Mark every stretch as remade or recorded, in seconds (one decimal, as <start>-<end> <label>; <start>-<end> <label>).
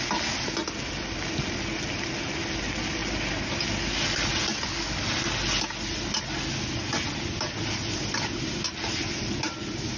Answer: 0.0-10.0 recorded